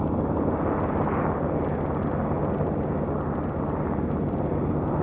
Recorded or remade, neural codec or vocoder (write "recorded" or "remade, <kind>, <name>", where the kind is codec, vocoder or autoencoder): recorded